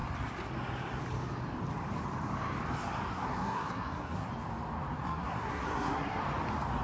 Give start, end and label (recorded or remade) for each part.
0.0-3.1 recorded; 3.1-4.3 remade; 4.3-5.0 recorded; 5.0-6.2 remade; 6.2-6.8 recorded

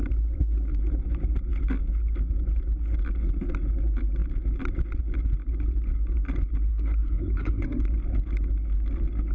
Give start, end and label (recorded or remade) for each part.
0.0-6.7 recorded; 6.7-7.9 remade; 7.9-9.3 recorded

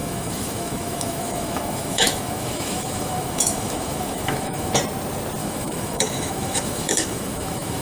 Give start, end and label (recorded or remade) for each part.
0.0-4.7 remade; 4.7-5.4 recorded; 5.4-7.8 remade

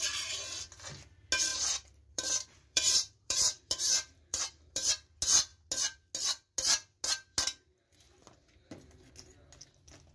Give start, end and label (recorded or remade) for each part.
0.0-1.5 recorded; 1.5-4.9 remade; 4.9-10.1 recorded

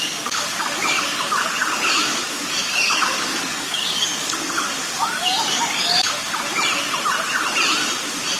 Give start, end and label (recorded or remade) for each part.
0.0-6.2 remade; 6.2-8.4 recorded

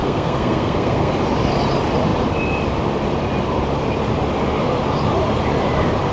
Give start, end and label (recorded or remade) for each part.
0.0-1.1 remade; 1.1-6.1 recorded